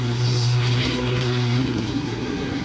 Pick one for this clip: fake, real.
fake